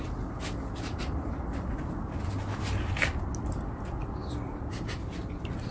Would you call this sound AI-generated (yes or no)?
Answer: no